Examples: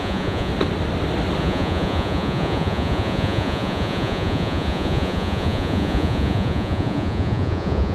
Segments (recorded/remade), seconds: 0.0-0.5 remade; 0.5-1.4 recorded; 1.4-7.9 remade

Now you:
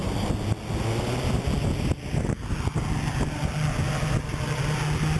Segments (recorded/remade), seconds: 0.0-5.2 recorded

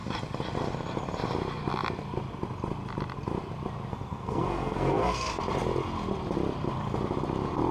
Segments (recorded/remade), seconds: 0.0-3.9 recorded; 3.9-5.4 remade; 5.4-7.7 recorded

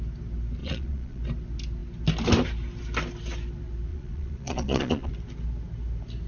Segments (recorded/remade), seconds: 0.0-0.6 recorded; 0.6-1.2 remade; 1.2-3.9 recorded; 3.9-5.1 remade; 5.1-6.3 recorded

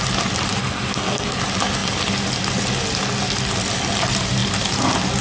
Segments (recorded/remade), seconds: 0.0-0.6 recorded; 0.6-1.4 remade; 1.4-5.2 recorded

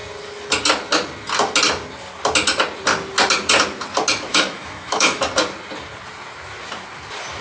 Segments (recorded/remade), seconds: 0.0-4.3 recorded; 4.3-5.2 remade; 5.2-7.4 recorded

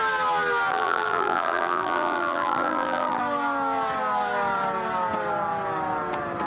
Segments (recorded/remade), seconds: 0.0-0.7 recorded; 0.7-3.2 remade; 3.2-6.5 recorded